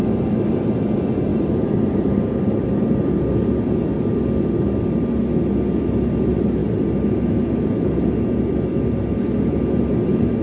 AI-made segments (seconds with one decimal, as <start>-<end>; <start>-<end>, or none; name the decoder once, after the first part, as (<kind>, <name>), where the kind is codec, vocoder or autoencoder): 1.3-3.7 (vocoder, BigVGAN v2)